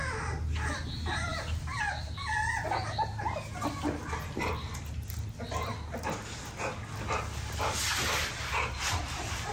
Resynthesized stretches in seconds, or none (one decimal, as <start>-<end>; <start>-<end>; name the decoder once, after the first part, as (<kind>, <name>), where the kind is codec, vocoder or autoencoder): 4.0-4.5 (vocoder, BigVGAN v2)